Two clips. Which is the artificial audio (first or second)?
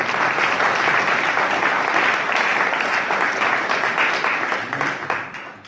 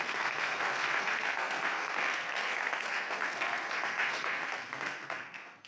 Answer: second